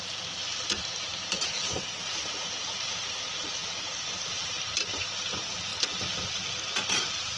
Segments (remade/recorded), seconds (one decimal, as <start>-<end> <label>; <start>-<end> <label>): 0.0-5.7 remade; 5.7-6.9 recorded; 6.9-7.4 remade